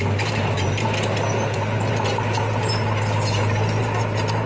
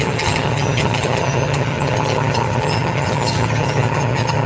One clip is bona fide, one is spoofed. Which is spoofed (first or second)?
second